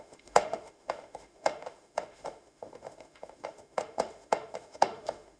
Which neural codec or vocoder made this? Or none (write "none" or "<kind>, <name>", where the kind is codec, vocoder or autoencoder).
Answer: autoencoder, DAC-VAE